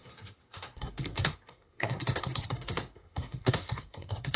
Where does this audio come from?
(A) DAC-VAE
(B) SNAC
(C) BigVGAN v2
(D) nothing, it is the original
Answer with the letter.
B